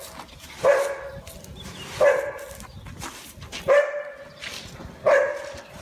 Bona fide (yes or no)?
yes